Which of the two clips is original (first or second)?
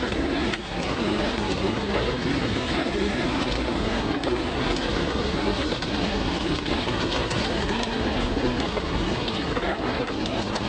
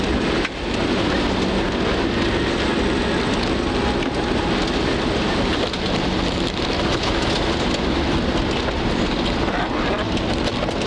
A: second